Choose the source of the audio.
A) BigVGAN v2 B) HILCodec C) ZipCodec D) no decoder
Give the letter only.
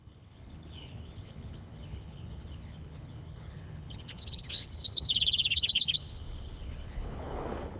B